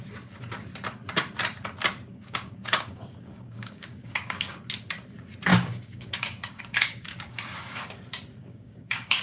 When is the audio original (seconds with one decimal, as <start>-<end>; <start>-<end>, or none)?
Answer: 0.0-2.1; 4.7-5.5; 8.0-8.4